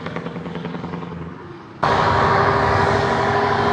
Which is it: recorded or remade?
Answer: remade